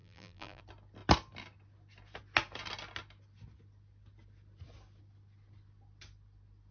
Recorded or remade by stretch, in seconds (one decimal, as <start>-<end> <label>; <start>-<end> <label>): 0.0-0.6 remade; 0.6-6.7 recorded